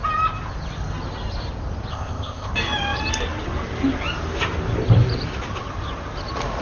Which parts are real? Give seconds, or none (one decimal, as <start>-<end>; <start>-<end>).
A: 0.0-1.9; 2.5-6.6